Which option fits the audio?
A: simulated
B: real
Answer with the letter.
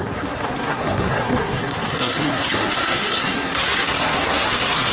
A